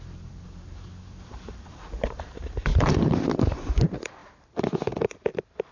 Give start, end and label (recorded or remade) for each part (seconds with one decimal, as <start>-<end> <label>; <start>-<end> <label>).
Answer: 0.0-5.7 remade